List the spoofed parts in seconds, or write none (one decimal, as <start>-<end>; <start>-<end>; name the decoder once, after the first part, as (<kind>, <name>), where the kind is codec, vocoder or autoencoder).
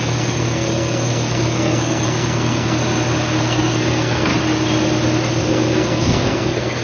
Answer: 0.0-2.8 (codec, SNAC); 3.4-4.3; 5.4-6.8